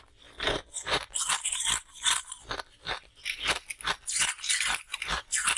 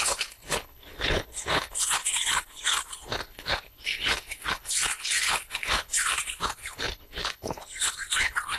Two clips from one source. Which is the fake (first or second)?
second